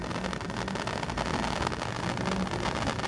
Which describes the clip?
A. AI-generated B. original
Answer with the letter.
B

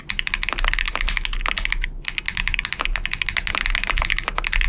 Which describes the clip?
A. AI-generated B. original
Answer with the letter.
B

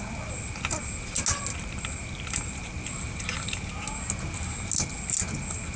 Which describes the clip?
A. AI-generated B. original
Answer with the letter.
B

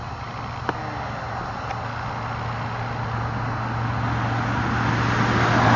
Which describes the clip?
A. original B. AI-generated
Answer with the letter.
A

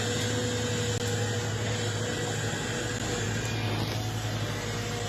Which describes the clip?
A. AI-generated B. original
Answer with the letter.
B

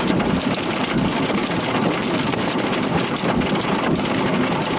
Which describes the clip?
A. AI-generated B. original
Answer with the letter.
B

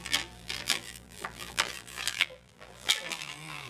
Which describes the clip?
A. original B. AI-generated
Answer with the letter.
B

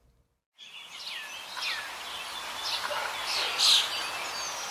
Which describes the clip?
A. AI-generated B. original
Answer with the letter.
B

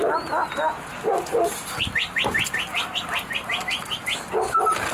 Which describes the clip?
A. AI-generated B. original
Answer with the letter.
B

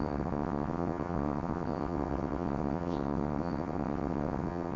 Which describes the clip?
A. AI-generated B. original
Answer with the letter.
A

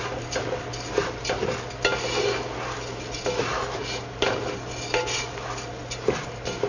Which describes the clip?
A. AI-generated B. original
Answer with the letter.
B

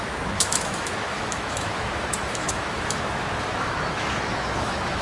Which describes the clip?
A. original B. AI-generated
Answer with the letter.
B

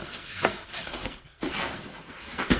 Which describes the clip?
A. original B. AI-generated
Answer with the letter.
B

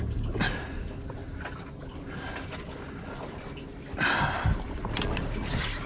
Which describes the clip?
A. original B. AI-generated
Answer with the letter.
A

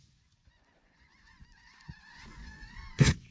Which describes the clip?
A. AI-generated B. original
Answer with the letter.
A